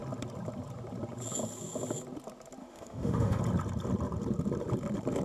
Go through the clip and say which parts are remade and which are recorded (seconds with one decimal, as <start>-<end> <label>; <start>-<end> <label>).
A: 0.0-2.6 recorded; 2.6-3.4 remade; 3.4-5.2 recorded